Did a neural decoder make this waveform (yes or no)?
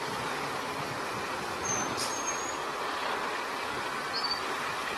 no